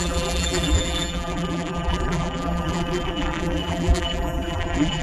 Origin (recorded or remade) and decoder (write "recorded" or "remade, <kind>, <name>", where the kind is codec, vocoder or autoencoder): remade, vocoder, BigVGAN v2